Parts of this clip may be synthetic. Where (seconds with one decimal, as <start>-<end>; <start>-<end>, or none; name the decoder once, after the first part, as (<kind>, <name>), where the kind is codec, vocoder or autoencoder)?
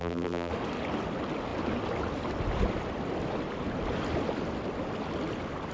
0.0-0.5 (vocoder, BigVGAN v2)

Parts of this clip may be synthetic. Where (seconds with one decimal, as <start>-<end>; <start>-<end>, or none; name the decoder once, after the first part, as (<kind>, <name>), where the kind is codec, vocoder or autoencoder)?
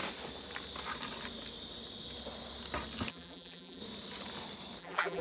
3.1-3.8 (vocoder, BigVGAN v2); 4.8-5.2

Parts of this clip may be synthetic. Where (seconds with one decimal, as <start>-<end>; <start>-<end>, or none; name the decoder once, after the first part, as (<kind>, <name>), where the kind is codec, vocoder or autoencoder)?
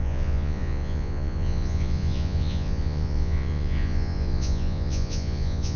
0.0-5.8 (vocoder, Vocos)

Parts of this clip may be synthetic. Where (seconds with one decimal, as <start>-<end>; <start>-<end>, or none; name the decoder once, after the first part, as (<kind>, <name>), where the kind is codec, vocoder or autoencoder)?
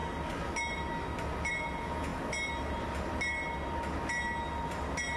1.5-2.1 (vocoder, Vocos)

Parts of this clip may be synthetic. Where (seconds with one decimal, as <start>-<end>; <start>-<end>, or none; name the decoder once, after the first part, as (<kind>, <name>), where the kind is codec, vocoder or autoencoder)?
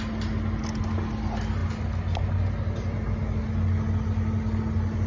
none